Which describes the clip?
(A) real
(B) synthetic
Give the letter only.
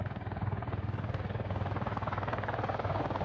B